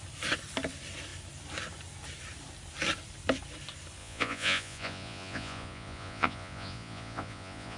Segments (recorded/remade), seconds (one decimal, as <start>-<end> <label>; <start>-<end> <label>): 0.0-4.0 recorded; 4.0-7.8 remade